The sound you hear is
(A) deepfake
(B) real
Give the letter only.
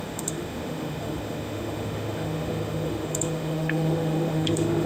A